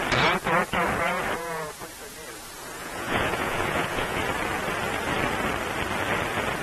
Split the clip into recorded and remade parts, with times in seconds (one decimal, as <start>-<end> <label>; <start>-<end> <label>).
0.0-2.8 recorded; 2.8-4.2 remade; 4.2-6.6 recorded